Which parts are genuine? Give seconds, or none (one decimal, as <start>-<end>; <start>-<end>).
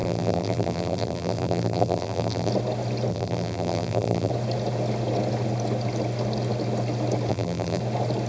2.5-3.1; 4.3-7.3; 7.8-8.3